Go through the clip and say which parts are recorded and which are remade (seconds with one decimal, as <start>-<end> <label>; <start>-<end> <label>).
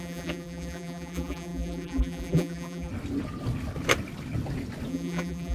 0.0-2.9 remade; 2.9-4.9 recorded; 4.9-5.5 remade